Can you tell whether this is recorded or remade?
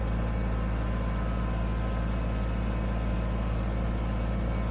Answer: recorded